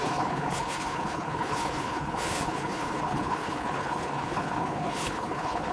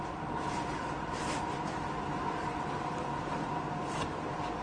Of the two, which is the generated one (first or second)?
first